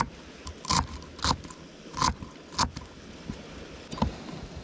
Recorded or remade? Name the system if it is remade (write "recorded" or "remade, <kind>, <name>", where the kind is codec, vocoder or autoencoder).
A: recorded